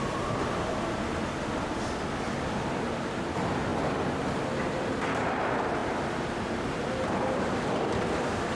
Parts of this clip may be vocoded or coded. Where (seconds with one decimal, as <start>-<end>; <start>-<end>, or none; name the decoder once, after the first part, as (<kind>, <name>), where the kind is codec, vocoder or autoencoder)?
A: 0.0-3.7 (vocoder, BigVGAN v2); 4.5-8.5